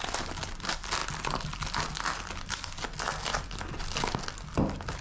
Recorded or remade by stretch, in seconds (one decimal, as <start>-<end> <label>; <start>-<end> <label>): 0.0-5.0 recorded